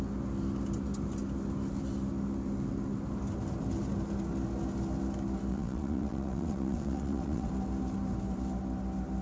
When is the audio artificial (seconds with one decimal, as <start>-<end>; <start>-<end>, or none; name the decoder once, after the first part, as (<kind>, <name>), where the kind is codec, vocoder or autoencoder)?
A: 5.5-7.5 (vocoder, WaveNeXt)